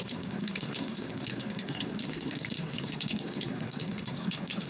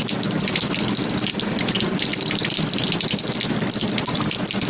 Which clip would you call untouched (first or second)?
second